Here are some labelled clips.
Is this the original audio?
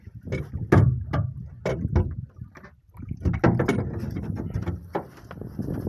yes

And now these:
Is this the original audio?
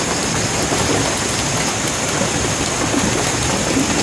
yes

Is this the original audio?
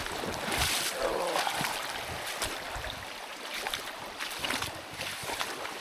yes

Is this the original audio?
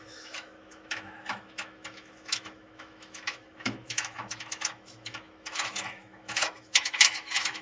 no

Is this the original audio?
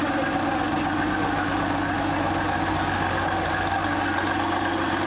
yes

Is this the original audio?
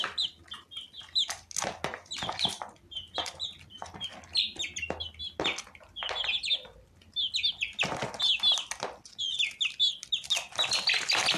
yes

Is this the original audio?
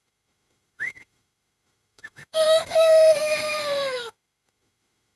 no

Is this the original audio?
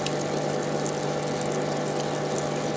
yes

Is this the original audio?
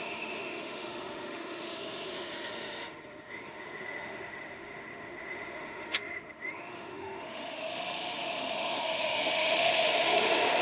no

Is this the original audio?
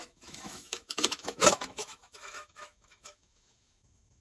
no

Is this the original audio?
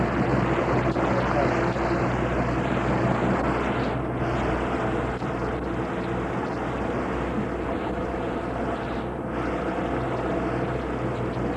yes